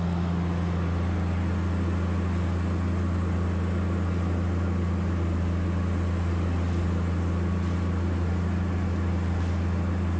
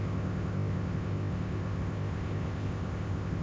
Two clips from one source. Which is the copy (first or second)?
second